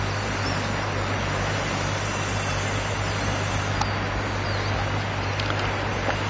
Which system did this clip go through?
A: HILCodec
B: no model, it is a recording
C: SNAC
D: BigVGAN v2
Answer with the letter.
B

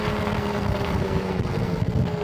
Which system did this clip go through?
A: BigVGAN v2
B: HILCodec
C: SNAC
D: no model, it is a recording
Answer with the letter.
C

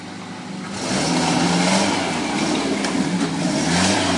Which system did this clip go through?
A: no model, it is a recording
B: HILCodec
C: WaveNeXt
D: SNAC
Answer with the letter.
A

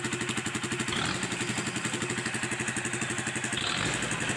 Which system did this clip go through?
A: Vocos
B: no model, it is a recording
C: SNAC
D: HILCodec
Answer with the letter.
B